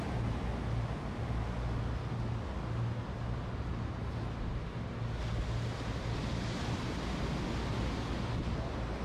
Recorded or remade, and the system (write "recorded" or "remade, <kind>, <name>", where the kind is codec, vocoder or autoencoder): recorded